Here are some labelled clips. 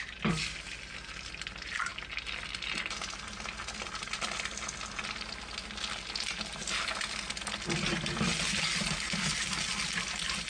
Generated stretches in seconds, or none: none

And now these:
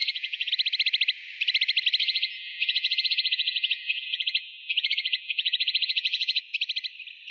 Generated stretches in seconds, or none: 0.0-0.5; 2.0-6.4

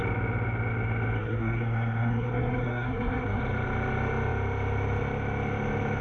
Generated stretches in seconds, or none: 1.2-3.4

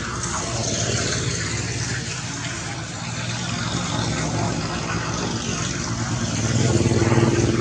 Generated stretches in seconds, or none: 0.6-1.6

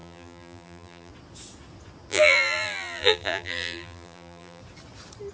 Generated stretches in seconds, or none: 0.0-1.1; 2.1-4.6

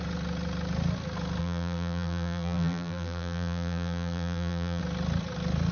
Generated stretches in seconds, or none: 1.4-4.8

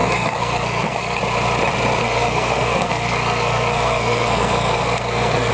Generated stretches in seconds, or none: 0.0-1.2; 2.0-5.5

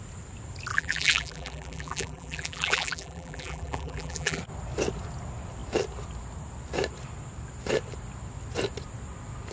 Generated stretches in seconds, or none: 0.7-4.4